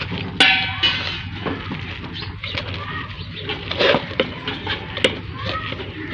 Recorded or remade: recorded